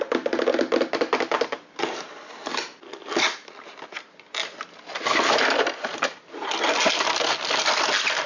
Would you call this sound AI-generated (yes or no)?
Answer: no